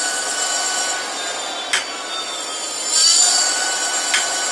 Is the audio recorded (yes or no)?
yes